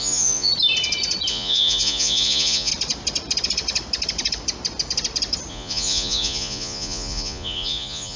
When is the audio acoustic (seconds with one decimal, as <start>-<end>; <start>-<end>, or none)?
0.5-1.3; 2.7-5.5